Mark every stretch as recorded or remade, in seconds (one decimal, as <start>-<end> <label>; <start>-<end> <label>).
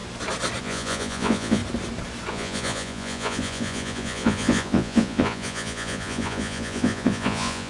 0.0-0.6 recorded; 0.6-1.6 remade; 1.6-2.3 recorded; 2.3-7.7 remade